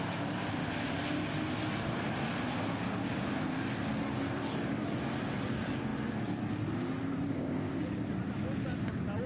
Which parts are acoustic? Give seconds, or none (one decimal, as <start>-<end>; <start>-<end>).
0.0-7.3; 7.8-9.3